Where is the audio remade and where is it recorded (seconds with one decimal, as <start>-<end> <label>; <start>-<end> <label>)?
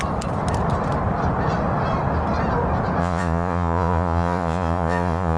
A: 0.0-3.0 recorded; 3.0-5.4 remade